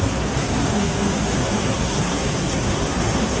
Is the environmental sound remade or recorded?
remade